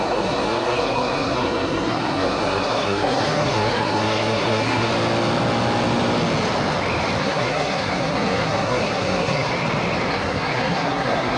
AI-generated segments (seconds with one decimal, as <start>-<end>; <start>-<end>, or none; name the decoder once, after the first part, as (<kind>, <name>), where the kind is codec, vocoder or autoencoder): 0.0-4.9 (codec, SNAC); 7.2-9.5; 10.1-11.4